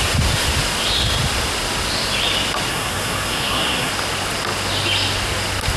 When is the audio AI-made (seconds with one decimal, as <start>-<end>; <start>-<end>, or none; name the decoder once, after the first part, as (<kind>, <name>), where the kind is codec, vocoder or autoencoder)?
2.7-3.9 (codec, SNAC)

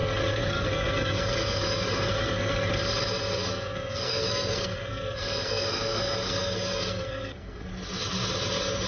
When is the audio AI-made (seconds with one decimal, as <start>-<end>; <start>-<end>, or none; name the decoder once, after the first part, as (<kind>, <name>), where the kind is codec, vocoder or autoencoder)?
0.0-2.7 (codec, SNAC); 3.4-7.7

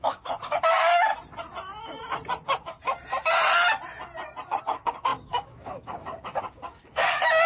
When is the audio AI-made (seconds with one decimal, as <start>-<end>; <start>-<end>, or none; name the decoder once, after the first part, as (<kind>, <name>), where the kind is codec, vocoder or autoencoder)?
0.0-1.1 (codec, DAC); 4.6-7.5

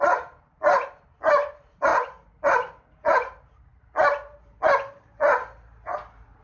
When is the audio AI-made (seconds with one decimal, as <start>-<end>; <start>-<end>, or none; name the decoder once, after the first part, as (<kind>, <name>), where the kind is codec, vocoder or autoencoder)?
none

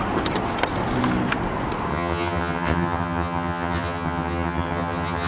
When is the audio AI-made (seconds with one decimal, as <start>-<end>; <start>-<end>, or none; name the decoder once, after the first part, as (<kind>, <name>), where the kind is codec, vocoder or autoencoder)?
1.9-5.3 (vocoder, HiFi-GAN)

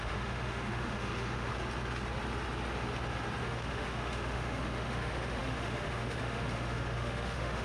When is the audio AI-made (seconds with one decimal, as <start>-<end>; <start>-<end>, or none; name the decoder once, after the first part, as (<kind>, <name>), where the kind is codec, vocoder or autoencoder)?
0.0-1.5 (autoencoder, DAC-VAE); 3.4-7.6

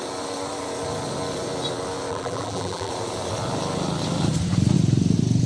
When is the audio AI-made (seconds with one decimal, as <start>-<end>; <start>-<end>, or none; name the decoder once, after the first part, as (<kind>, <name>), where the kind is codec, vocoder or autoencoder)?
2.1-2.9 (vocoder, BigVGAN v2)